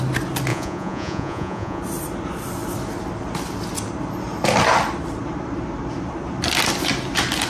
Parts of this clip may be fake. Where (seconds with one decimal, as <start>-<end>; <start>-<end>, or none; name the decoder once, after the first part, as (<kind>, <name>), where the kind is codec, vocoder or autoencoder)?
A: 0.5-1.8 (vocoder, Vocos)